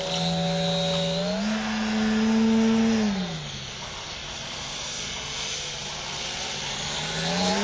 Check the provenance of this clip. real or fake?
real